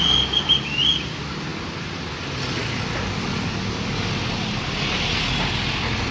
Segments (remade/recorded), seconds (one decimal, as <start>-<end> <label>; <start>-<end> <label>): 0.0-6.1 recorded